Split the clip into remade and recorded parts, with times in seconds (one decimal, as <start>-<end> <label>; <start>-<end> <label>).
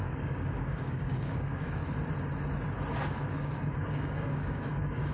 0.0-1.8 remade; 1.8-3.3 recorded; 3.3-5.1 remade